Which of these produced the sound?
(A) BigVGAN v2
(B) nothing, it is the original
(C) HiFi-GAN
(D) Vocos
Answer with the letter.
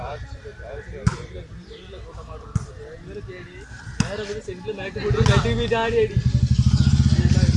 B